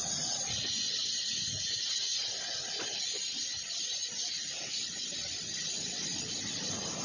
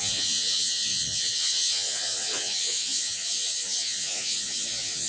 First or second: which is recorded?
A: first